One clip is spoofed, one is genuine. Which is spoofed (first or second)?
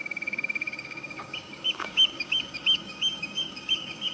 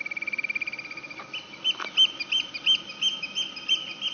first